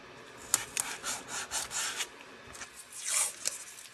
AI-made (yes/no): no